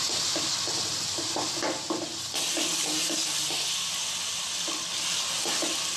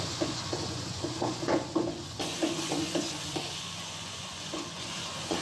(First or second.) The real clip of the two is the first